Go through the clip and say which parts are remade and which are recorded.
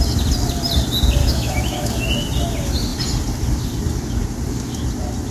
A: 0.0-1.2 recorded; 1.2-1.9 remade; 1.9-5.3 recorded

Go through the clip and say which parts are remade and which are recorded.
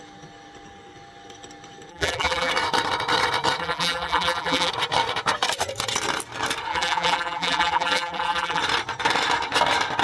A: 0.0-1.9 recorded; 1.9-2.5 remade; 2.5-3.6 recorded; 3.6-4.7 remade; 4.7-6.7 recorded; 6.7-8.6 remade; 8.6-10.0 recorded